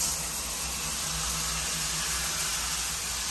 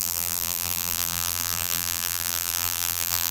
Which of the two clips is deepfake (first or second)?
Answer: second